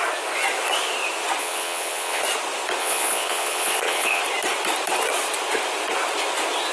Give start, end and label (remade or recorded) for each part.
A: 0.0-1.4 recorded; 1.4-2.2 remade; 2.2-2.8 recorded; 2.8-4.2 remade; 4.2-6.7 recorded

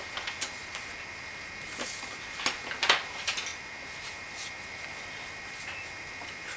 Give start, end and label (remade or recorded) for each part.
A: 0.0-6.6 recorded

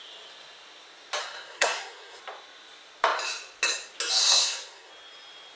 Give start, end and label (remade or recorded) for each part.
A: 0.0-1.2 recorded; 1.2-2.2 remade; 2.2-4.2 recorded; 4.2-4.9 remade; 4.9-5.6 recorded

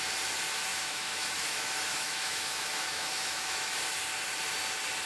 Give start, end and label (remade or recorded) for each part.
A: 0.0-0.7 recorded; 0.7-3.8 remade; 3.8-5.1 recorded